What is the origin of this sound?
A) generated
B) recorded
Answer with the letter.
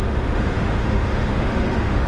A